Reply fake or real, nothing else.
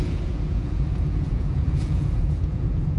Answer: fake